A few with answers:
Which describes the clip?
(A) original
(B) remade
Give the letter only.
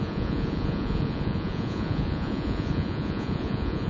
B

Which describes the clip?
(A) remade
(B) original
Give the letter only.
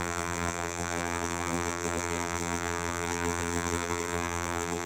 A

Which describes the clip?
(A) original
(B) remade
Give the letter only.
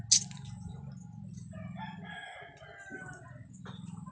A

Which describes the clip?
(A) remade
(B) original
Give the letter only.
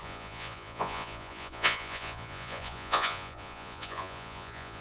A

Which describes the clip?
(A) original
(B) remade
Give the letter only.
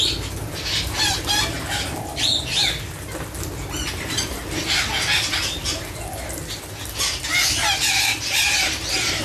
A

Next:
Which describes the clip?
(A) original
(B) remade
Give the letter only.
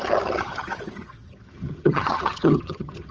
B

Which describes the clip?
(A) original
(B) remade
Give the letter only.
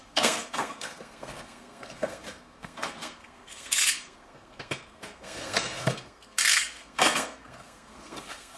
B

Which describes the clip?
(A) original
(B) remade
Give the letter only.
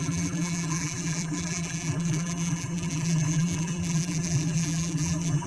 B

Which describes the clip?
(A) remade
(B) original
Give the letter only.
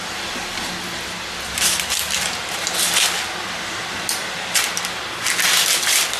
B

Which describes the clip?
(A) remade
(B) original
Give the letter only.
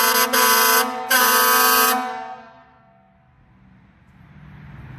B